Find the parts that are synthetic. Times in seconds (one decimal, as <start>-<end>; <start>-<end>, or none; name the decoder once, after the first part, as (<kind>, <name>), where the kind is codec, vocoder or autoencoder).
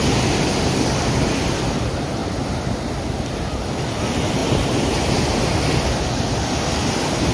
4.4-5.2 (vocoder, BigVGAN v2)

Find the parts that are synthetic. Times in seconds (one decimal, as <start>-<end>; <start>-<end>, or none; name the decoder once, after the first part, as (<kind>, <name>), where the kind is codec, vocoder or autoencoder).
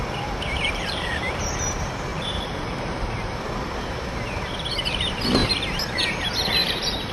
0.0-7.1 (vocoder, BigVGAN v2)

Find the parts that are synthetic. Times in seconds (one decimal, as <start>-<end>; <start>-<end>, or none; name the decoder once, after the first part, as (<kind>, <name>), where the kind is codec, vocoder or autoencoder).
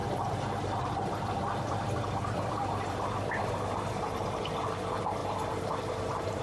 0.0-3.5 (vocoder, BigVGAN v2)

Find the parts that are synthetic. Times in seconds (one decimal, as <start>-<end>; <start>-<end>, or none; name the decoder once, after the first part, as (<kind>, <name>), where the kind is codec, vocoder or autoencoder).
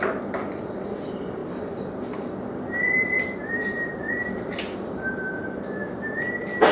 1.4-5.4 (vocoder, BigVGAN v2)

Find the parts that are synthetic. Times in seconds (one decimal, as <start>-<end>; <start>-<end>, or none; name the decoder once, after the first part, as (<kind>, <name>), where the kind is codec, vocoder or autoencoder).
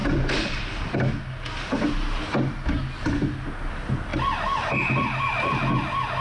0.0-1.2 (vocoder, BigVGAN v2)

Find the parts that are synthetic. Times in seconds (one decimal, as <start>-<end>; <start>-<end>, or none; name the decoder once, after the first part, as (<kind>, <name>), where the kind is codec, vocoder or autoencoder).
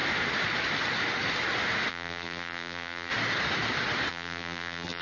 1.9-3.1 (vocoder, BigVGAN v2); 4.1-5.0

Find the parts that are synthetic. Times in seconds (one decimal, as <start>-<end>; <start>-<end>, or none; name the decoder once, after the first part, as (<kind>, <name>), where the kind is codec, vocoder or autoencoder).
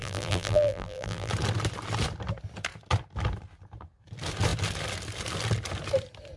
0.0-1.3 (vocoder, BigVGAN v2)